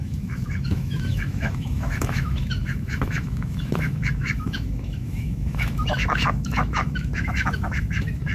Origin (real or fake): fake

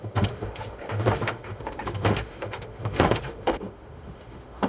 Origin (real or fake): fake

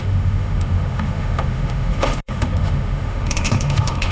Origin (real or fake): fake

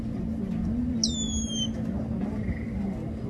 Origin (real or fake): real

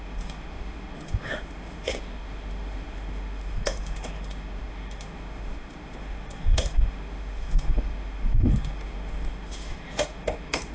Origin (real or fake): fake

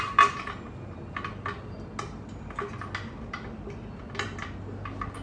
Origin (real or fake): real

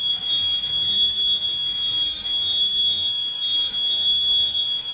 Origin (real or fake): fake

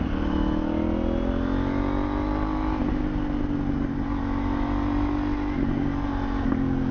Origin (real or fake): real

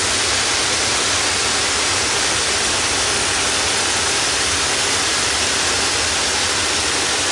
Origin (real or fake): real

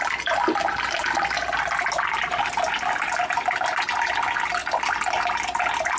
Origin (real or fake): real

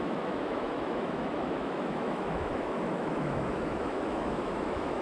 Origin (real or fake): fake